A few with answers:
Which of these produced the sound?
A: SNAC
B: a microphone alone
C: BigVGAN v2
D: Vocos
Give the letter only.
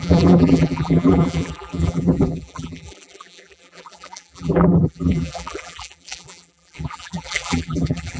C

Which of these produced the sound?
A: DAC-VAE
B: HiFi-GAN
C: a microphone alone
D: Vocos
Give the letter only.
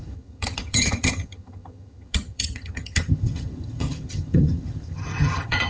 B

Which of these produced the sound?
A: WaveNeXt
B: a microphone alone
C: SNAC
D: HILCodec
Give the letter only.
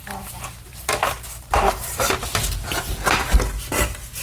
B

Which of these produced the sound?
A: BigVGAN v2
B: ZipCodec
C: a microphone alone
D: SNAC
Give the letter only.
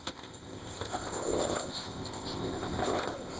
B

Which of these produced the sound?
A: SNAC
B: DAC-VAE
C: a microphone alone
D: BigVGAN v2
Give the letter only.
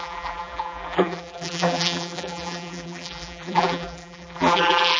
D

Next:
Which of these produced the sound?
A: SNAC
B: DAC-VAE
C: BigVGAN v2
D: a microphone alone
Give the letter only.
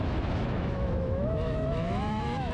B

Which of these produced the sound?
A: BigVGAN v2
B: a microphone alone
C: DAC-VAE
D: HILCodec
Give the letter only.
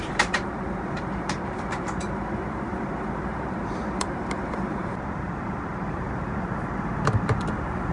A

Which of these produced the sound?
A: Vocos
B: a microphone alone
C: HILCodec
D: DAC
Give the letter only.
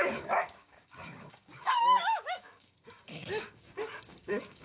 D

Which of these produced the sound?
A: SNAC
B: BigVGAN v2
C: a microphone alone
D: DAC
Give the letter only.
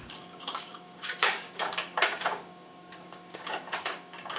D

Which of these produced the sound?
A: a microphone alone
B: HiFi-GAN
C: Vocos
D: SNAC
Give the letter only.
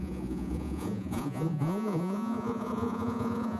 C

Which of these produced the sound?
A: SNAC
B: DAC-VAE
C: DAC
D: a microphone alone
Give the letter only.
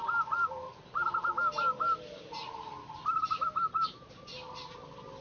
D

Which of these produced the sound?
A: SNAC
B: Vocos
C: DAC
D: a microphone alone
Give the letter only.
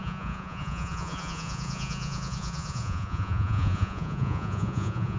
B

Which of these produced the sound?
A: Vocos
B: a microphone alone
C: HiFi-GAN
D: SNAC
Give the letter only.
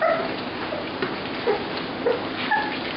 B